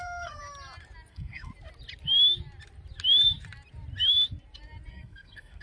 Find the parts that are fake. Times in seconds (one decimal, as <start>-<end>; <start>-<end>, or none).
0.0-0.4; 1.1-1.5; 4.9-5.6